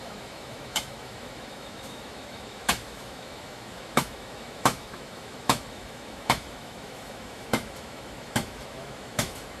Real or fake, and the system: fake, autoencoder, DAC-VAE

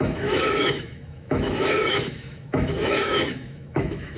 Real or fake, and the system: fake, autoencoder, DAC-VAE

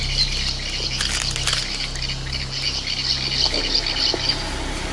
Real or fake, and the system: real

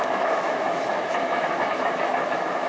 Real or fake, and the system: fake, autoencoder, DAC-VAE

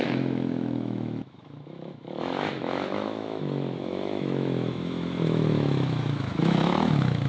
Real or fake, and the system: fake, autoencoder, DAC-VAE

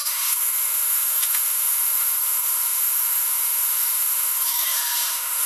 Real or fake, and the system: fake, autoencoder, DAC-VAE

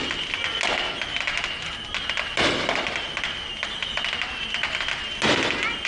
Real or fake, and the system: real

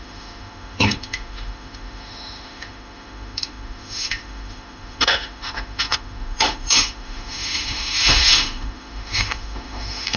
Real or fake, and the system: fake, autoencoder, DAC-VAE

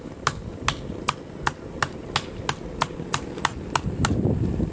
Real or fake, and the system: real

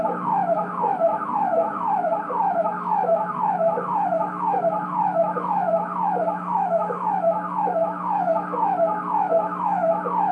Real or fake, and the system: fake, autoencoder, DAC-VAE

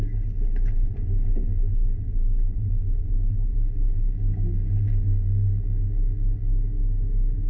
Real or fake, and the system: real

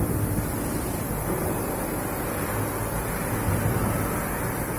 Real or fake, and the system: real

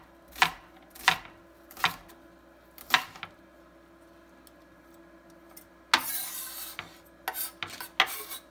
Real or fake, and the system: real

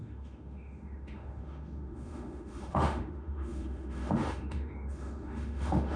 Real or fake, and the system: fake, autoencoder, DAC-VAE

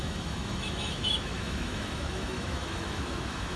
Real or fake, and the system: fake, autoencoder, DAC-VAE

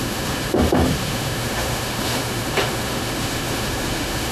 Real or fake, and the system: fake, autoencoder, DAC-VAE